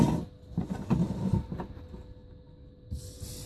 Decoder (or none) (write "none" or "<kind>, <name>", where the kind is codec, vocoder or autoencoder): none